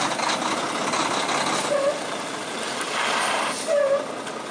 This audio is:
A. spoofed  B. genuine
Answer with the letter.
B